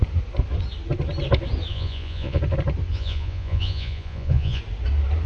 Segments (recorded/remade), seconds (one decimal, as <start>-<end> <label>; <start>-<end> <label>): 0.0-1.7 recorded; 1.7-2.4 remade; 2.4-2.9 recorded; 2.9-4.6 remade; 4.6-5.3 recorded